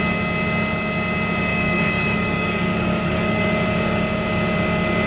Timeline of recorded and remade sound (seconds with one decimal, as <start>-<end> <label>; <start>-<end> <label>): 0.0-1.5 recorded; 1.5-3.4 remade; 3.4-5.1 recorded